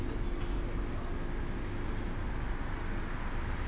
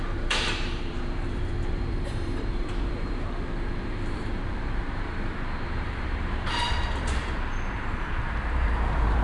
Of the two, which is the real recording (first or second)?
first